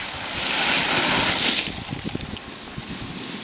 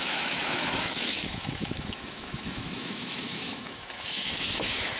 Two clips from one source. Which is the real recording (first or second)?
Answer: first